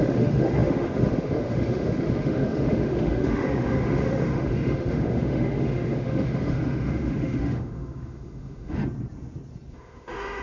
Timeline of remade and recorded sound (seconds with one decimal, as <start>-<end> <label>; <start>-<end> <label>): 0.0-8.8 remade; 8.8-9.7 recorded; 9.7-10.4 remade